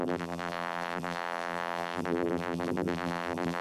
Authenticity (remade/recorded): remade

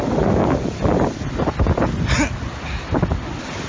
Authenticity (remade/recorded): recorded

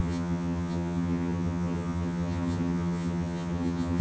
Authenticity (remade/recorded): remade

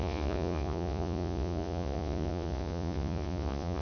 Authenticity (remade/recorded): remade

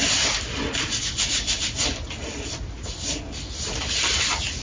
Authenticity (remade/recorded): recorded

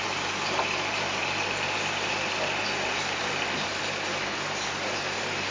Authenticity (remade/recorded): recorded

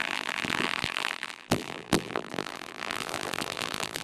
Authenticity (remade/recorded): remade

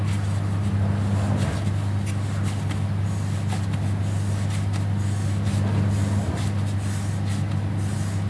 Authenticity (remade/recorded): recorded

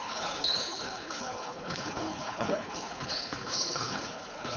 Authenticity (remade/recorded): remade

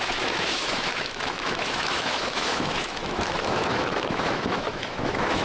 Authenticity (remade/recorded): remade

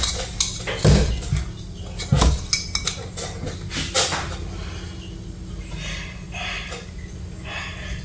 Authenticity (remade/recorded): recorded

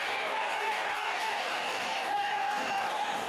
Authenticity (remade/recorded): remade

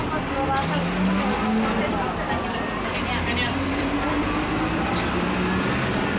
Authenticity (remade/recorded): recorded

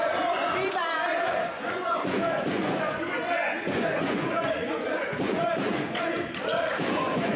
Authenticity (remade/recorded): remade